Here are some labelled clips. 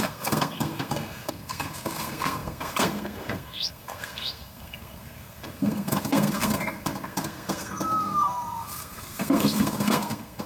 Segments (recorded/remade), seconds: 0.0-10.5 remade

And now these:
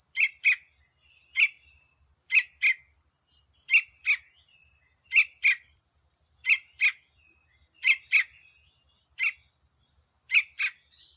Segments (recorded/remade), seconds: 0.0-11.2 recorded

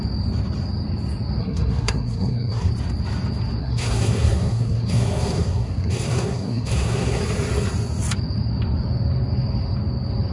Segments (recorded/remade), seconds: 0.0-1.4 recorded; 1.4-2.7 remade; 2.7-3.6 recorded; 3.6-7.2 remade; 7.2-10.3 recorded

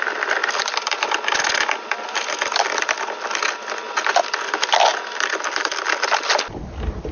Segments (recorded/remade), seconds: 0.0-7.1 recorded

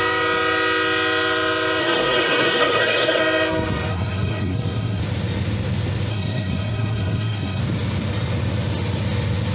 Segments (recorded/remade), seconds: 0.0-1.8 recorded; 1.8-3.2 remade; 3.2-3.9 recorded; 3.9-5.0 remade; 5.0-6.1 recorded; 6.1-7.6 remade; 7.6-9.5 recorded

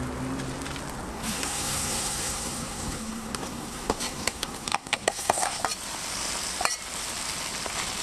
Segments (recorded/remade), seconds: 0.0-1.1 recorded; 1.1-5.6 remade; 5.6-8.0 recorded

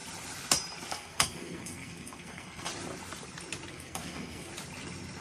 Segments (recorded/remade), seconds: 0.0-0.9 recorded; 0.9-2.7 remade; 2.7-3.7 recorded; 3.7-4.5 remade; 4.5-5.2 recorded

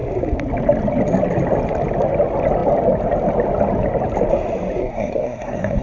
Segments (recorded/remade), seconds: 0.0-4.8 recorded; 4.8-5.8 remade